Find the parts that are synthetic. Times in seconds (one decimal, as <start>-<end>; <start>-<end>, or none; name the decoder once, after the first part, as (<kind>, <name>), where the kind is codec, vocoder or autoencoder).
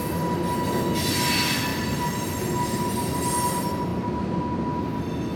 1.7-3.3 (vocoder, BigVGAN v2)